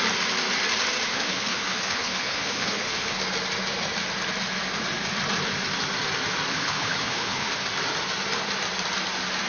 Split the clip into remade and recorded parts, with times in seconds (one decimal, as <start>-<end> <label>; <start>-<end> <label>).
0.0-1.1 recorded; 1.1-3.2 remade; 3.2-6.5 recorded; 6.5-7.5 remade; 7.5-9.5 recorded